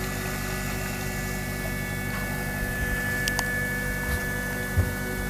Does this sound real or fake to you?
real